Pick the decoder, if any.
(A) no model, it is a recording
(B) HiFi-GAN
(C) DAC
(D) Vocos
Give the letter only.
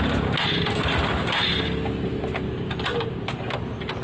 A